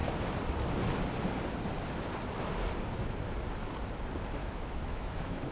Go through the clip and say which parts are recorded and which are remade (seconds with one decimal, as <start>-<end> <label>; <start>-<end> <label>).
0.0-4.4 recorded; 4.4-5.5 remade